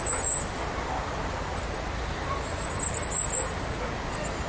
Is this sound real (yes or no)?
yes